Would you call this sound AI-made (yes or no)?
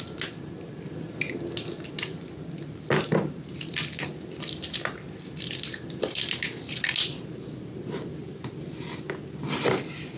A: no